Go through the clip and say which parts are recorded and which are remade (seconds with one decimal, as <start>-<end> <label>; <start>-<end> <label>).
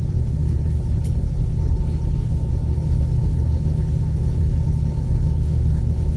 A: 0.0-6.2 remade